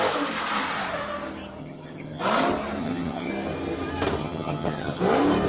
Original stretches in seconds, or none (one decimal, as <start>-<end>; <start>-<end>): 0.0-1.6; 2.2-2.8; 3.3-4.2; 5.0-5.5

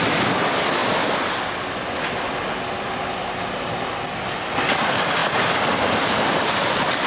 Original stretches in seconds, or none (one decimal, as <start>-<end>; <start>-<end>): 0.0-7.1

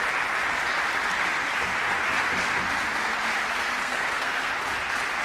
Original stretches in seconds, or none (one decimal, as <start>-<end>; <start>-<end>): 0.0-3.8; 4.5-5.2